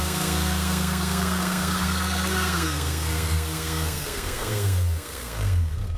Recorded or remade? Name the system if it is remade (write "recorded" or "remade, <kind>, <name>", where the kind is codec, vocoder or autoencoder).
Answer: remade, codec, SNAC